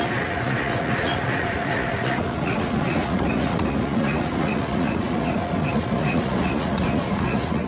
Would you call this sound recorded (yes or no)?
no